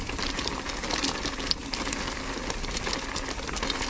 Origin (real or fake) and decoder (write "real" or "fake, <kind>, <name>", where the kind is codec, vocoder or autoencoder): real